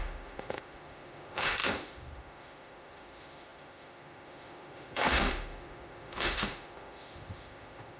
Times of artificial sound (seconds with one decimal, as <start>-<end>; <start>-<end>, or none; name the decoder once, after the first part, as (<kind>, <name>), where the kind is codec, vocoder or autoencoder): 0.0-8.0 (autoencoder, DAC-VAE)